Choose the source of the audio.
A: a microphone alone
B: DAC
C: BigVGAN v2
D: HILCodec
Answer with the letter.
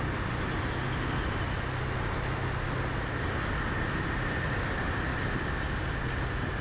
A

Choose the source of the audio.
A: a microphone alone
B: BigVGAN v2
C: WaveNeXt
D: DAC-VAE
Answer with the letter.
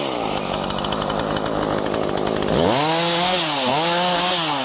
A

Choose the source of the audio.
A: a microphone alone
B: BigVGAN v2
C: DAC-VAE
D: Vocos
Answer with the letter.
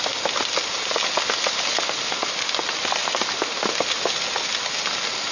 A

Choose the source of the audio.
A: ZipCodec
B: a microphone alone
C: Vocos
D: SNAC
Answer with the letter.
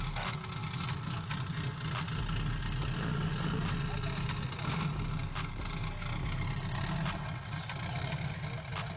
B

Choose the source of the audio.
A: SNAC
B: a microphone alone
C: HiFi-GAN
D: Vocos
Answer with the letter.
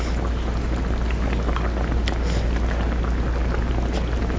B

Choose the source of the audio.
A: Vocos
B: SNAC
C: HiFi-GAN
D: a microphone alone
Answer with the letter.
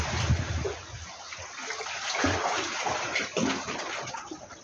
D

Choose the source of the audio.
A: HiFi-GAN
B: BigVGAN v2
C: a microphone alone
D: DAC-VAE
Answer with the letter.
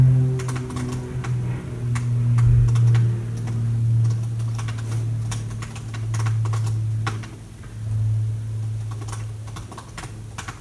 C